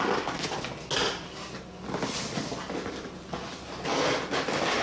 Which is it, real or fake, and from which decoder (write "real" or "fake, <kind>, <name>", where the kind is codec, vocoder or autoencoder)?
real